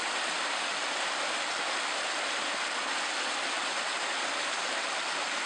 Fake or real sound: real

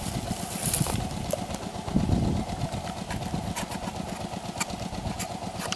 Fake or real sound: real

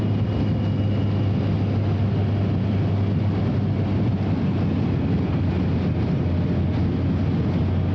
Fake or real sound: real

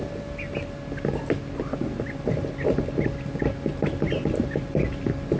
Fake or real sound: real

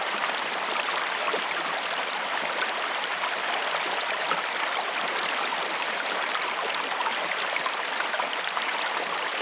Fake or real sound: fake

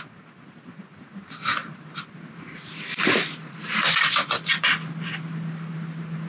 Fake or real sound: real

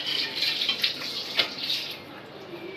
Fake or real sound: real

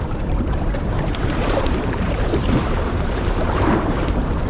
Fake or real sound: fake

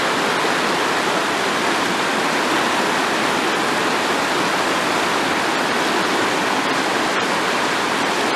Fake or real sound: real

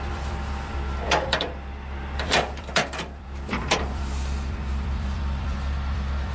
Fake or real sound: fake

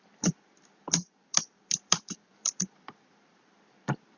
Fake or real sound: fake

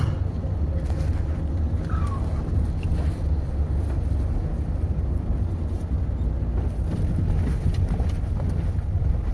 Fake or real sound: real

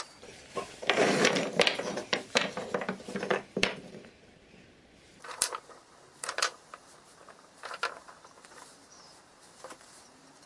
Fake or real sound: fake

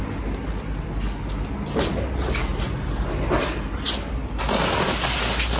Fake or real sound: real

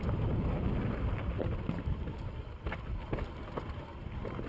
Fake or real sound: real